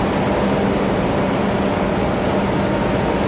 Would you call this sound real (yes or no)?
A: yes